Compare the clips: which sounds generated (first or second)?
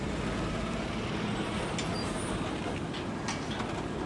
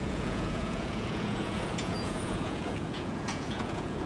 second